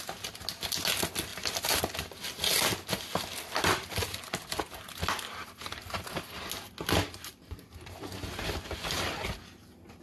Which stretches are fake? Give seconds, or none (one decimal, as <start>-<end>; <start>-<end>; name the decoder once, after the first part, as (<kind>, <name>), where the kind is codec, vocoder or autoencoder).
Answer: 3.1-4.6 (vocoder, BigVGAN v2)